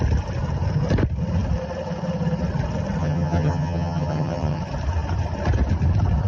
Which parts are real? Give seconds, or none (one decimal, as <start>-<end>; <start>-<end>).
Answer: 0.0-3.0; 4.6-6.3